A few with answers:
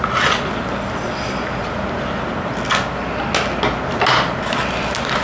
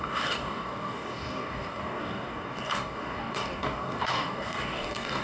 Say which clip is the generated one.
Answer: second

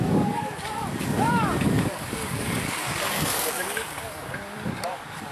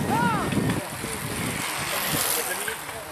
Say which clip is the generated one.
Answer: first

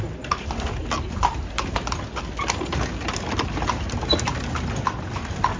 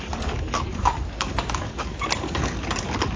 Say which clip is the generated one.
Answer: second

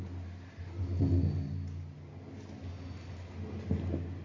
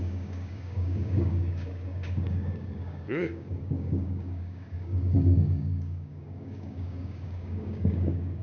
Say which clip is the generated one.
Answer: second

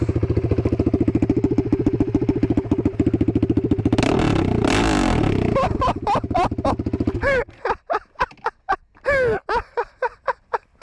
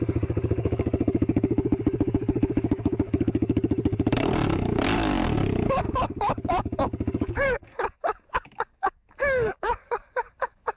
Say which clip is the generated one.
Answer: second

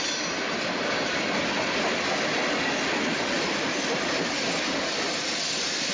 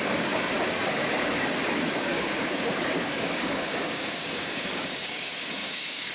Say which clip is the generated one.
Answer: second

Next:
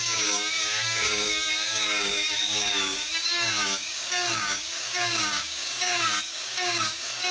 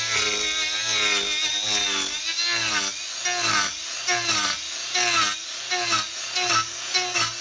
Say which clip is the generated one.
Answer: first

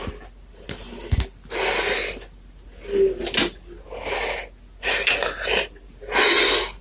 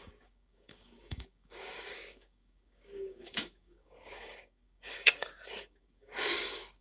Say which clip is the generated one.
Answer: second